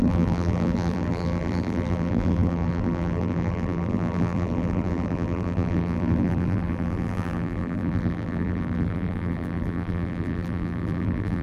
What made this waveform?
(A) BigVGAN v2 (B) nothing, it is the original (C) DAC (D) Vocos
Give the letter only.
A